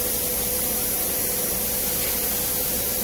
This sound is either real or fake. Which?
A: real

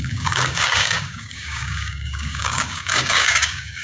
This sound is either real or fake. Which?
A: fake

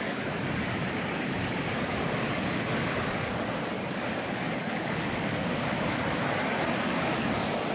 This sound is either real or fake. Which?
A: fake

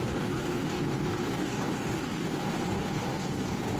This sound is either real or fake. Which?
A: fake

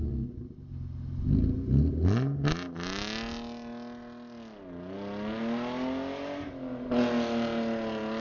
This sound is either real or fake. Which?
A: real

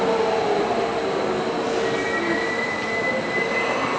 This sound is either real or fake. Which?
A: real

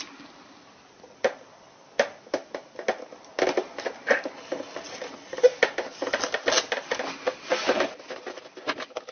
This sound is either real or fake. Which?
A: real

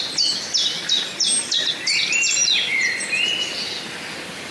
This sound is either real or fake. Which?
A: real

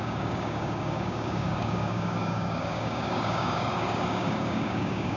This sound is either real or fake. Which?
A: fake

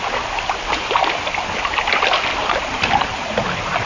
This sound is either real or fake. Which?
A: real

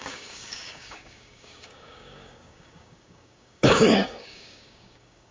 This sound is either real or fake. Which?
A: fake